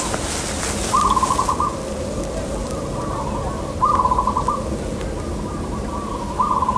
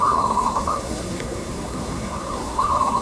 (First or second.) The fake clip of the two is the second